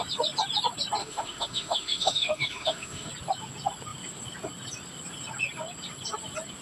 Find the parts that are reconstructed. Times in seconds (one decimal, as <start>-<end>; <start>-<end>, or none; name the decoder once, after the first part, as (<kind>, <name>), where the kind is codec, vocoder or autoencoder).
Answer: 1.0-3.1 (autoencoder, DAC-VAE)